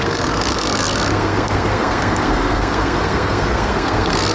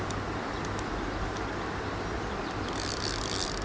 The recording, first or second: second